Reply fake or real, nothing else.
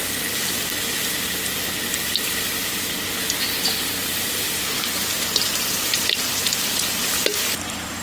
real